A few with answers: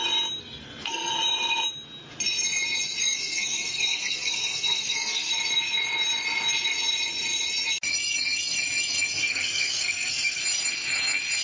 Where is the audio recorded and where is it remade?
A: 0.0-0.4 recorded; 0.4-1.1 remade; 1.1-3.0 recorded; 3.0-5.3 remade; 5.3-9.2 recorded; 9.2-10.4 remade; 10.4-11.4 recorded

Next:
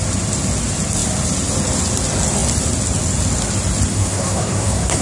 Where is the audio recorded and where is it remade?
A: 0.0-3.9 recorded; 3.9-5.0 remade

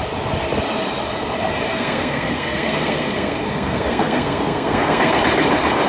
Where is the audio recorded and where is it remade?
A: 0.0-1.7 recorded; 1.7-5.2 remade; 5.2-5.9 recorded

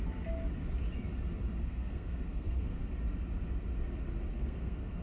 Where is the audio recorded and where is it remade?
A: 0.0-1.6 recorded; 1.6-2.9 remade; 2.9-4.3 recorded; 4.3-5.0 remade

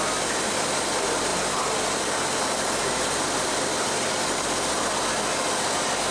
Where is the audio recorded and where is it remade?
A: 0.0-6.1 recorded